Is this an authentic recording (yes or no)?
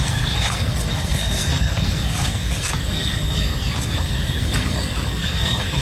no